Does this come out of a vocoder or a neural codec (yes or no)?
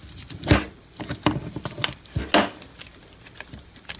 no